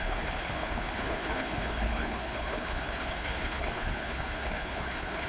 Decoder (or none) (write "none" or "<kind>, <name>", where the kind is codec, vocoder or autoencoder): codec, HILCodec